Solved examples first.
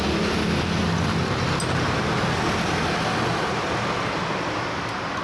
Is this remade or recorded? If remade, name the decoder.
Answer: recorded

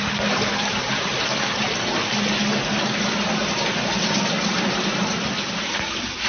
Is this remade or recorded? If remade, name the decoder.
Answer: recorded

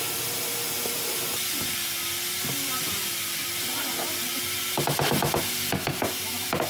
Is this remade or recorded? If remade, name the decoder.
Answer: recorded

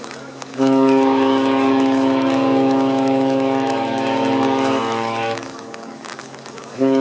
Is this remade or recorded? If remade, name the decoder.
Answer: remade, codec, DAC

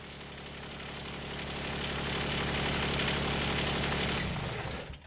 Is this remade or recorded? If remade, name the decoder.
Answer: recorded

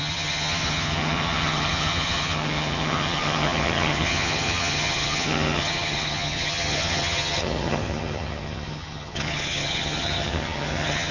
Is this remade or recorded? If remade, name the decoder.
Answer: remade, vocoder, HiFi-GAN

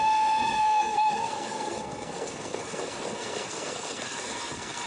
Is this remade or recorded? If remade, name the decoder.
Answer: remade, codec, SNAC